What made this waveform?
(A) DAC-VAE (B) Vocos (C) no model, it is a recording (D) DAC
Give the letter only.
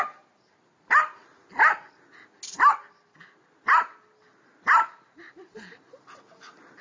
C